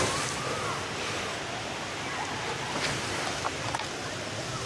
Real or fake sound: real